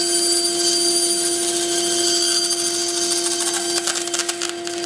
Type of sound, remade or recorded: recorded